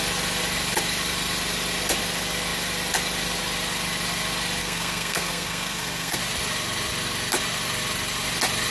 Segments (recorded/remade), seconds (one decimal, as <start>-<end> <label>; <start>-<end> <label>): 0.0-4.6 recorded; 4.6-6.2 remade; 6.2-8.7 recorded